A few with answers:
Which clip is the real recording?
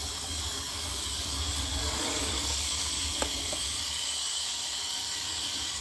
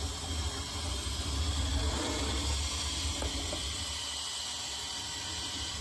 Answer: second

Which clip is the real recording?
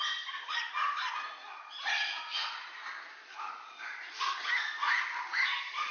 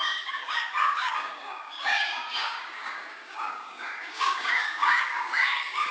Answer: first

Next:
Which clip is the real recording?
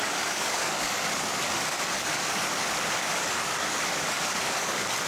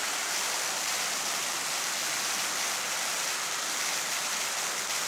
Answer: second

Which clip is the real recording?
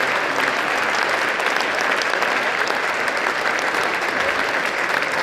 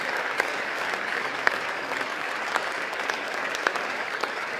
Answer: first